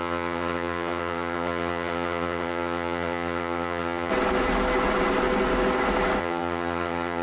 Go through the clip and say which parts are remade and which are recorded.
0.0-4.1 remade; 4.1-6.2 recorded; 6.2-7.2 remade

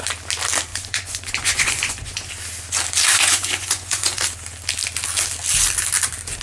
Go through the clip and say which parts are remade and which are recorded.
0.0-0.7 recorded; 0.7-2.3 remade; 2.3-3.1 recorded; 3.1-4.2 remade; 4.2-6.4 recorded

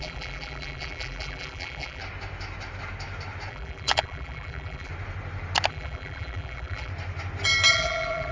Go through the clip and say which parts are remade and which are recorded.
0.0-2.0 remade; 2.0-3.5 recorded; 3.5-4.9 remade; 4.9-5.7 recorded; 5.7-6.9 remade; 6.9-7.7 recorded; 7.7-8.3 remade

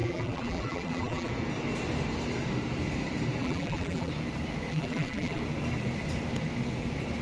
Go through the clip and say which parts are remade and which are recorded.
0.0-1.3 remade; 1.3-3.4 recorded; 3.4-4.1 remade; 4.1-4.7 recorded; 4.7-5.4 remade; 5.4-7.2 recorded

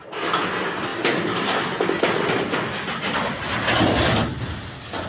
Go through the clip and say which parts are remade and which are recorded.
0.0-5.1 recorded